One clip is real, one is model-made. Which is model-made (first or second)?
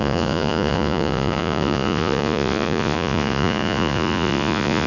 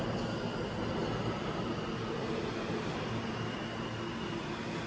first